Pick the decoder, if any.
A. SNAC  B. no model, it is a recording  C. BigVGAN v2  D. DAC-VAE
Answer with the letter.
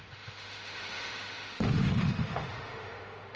D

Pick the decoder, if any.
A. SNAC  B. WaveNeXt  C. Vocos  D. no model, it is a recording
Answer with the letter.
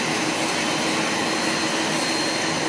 D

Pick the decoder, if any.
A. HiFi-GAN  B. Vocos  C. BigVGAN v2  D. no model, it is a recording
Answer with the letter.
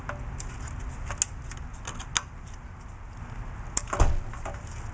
D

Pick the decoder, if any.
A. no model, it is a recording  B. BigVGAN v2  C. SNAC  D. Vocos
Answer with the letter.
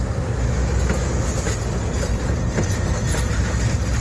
A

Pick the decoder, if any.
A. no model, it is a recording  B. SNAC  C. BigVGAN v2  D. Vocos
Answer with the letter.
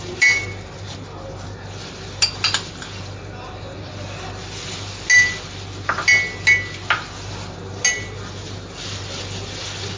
A